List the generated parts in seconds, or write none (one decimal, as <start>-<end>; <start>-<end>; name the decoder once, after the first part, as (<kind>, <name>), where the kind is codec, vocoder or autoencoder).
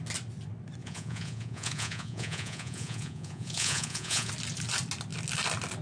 0.8-4.3 (vocoder, Vocos)